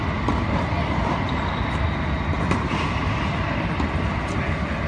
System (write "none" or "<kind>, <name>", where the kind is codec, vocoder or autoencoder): none